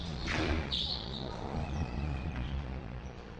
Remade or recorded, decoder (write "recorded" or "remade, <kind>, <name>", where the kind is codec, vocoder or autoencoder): remade, vocoder, Vocos